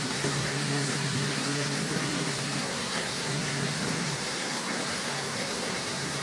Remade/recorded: remade